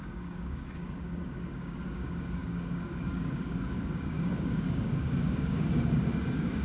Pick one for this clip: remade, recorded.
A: remade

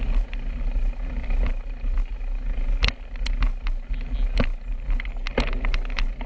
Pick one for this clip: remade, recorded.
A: recorded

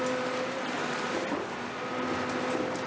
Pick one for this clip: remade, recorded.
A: recorded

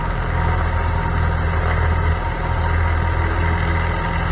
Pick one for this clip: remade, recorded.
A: recorded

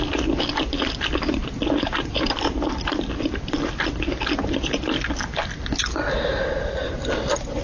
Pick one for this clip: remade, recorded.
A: recorded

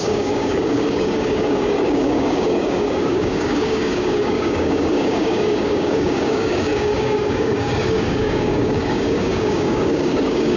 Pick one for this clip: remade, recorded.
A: remade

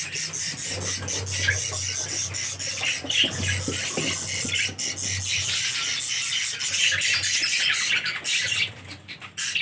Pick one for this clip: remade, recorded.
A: recorded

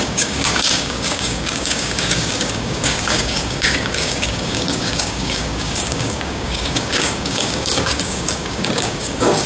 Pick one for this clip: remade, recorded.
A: remade